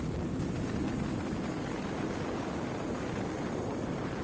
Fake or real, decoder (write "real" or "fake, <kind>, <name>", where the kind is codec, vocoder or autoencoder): real